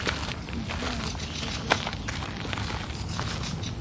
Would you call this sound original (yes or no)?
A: yes